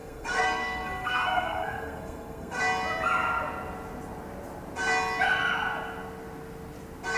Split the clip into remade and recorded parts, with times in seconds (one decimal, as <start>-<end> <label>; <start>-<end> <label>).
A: 0.0-2.6 remade; 2.6-7.2 recorded